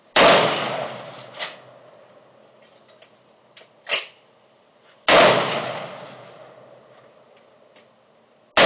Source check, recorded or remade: recorded